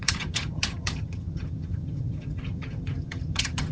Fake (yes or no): yes